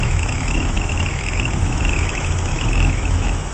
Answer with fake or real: fake